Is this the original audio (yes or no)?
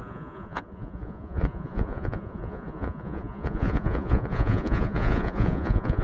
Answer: no